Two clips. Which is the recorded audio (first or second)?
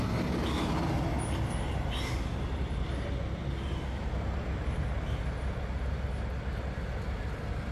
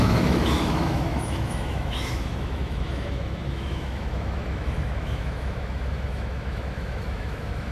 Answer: first